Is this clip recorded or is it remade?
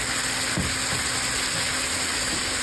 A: recorded